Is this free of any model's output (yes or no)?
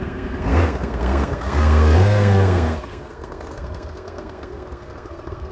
no